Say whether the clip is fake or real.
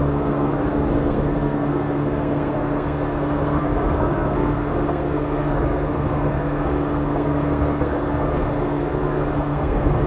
fake